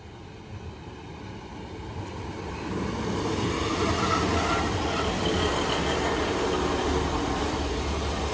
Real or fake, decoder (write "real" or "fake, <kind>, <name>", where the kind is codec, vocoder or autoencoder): real